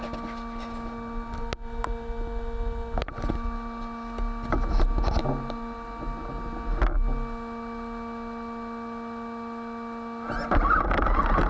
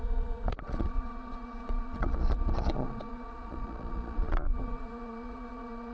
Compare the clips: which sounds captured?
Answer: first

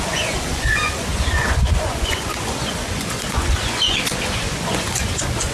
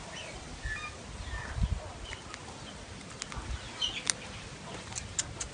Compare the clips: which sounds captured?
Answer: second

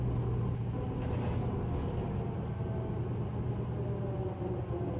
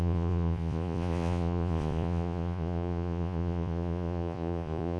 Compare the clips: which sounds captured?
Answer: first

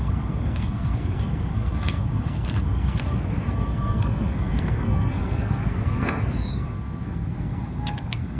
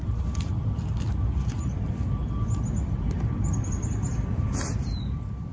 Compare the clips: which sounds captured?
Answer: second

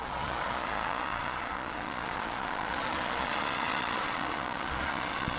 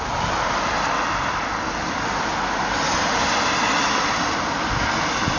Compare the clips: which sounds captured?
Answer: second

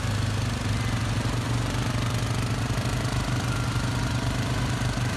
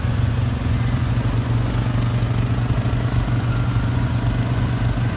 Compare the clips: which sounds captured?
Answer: first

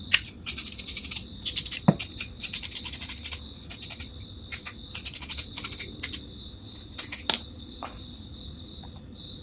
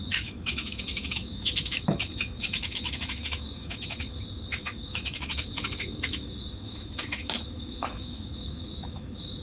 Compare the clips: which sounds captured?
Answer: first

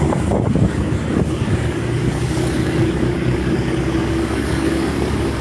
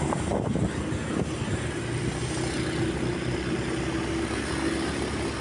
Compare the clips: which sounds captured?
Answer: second